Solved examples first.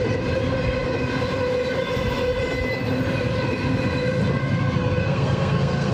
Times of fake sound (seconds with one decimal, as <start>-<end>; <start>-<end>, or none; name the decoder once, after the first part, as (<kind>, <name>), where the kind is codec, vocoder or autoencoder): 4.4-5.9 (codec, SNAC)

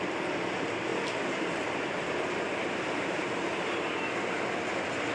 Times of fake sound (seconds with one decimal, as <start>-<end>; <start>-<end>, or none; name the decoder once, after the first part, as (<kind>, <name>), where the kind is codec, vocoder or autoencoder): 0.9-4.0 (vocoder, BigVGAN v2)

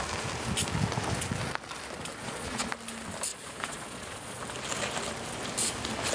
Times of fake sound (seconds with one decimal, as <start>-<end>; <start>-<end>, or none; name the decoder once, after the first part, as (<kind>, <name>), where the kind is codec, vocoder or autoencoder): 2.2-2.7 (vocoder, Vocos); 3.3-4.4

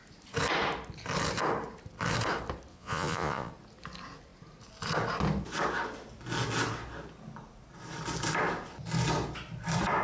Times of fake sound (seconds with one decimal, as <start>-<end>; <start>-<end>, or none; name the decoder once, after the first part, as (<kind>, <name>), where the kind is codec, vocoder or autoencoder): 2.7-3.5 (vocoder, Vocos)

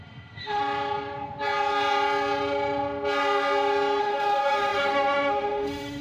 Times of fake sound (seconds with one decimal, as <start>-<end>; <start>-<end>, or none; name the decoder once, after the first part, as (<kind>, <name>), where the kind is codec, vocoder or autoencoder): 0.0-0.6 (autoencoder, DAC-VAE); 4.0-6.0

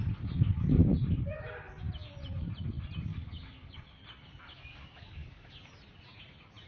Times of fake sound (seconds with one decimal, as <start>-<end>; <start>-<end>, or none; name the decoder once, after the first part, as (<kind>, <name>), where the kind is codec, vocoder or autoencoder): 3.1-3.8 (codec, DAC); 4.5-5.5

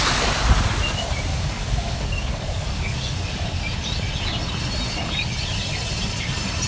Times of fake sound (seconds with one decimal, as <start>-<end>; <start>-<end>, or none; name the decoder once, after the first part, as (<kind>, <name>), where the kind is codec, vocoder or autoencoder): 1.3-3.6 (codec, DAC)

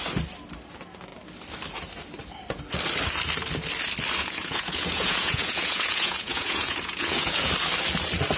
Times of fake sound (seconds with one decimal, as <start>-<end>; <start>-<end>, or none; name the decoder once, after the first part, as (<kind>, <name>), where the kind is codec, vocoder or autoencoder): 4.2-7.5 (vocoder, Vocos)